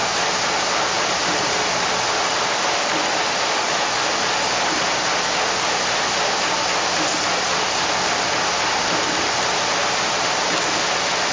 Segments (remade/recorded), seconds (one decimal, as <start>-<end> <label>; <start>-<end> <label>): 0.0-11.3 recorded